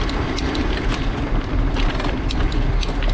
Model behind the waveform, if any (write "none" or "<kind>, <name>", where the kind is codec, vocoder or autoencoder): none